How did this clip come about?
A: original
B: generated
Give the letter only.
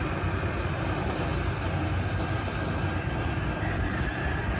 A